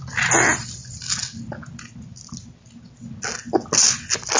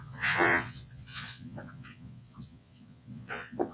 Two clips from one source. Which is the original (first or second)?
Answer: first